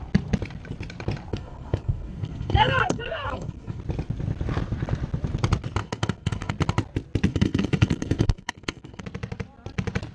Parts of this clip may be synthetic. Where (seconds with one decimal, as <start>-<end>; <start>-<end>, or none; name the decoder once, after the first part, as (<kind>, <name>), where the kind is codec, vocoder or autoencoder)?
1.3-3.8 (codec, SNAC); 5.8-6.5; 7.3-9.0